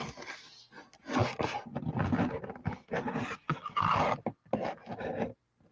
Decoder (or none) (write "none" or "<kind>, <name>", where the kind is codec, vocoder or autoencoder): none